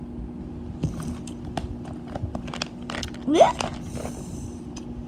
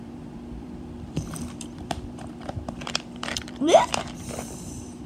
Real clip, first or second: first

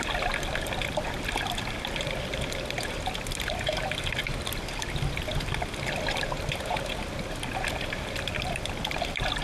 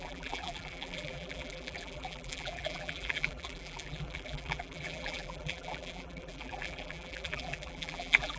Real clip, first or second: first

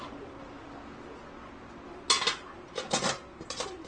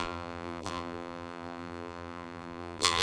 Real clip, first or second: first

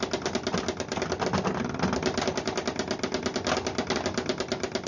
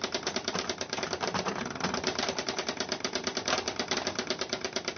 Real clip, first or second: first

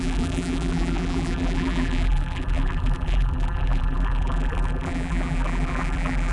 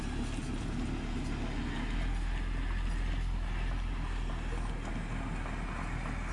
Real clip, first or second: second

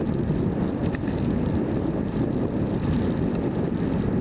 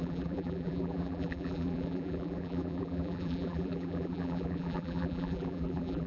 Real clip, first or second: first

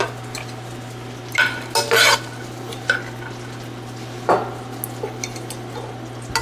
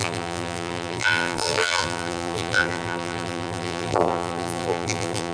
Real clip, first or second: first